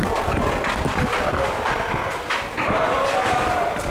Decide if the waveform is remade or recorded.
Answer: recorded